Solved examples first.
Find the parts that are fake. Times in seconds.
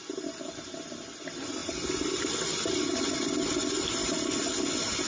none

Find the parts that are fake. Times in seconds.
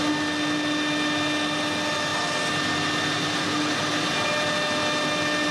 none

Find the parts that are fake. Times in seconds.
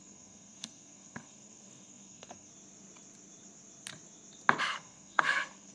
0.0-2.5 (codec, SNAC); 4.6-5.7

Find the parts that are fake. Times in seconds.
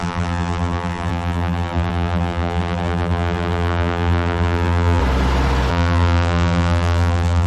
0.0-5.0 (vocoder, BigVGAN v2); 5.7-7.5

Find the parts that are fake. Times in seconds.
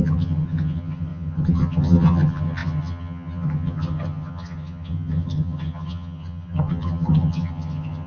0.0-8.1 (vocoder, HiFi-GAN)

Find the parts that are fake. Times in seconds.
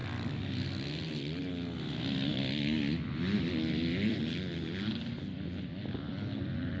none